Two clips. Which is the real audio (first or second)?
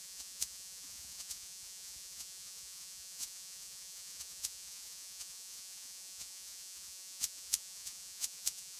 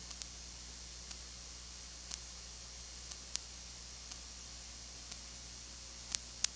second